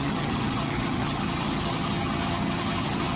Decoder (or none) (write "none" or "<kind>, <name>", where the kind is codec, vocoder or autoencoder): vocoder, HiFi-GAN